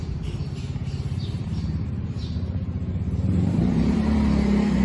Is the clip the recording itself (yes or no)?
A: no